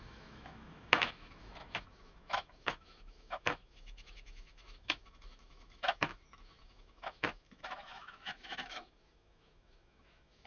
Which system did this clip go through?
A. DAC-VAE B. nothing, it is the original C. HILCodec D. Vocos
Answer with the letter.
A